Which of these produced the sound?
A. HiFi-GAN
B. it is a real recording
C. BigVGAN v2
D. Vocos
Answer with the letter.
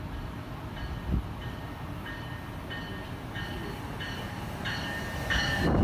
B